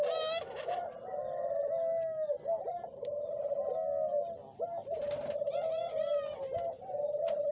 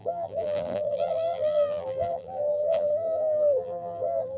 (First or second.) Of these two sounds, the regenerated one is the second